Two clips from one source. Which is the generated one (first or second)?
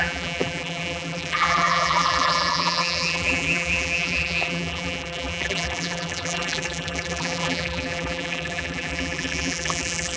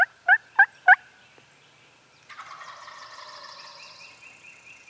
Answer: first